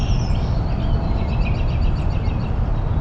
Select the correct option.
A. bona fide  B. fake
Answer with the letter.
A